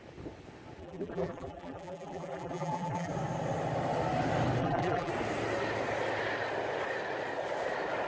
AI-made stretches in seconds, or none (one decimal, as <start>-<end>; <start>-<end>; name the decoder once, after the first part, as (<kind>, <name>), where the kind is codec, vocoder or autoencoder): 0.8-3.1 (vocoder, BigVGAN v2); 4.6-5.1